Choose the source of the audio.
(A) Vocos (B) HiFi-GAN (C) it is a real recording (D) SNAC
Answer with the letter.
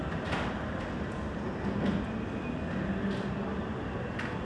C